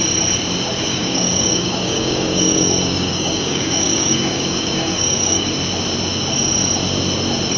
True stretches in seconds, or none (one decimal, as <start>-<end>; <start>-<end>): 0.0-0.9; 5.5-7.6